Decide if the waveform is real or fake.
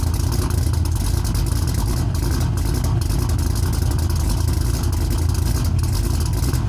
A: real